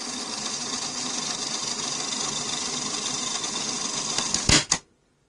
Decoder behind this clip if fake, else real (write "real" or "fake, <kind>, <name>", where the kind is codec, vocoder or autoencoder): real